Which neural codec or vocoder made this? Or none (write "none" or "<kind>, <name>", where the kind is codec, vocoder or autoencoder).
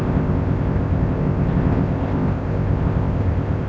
codec, ZipCodec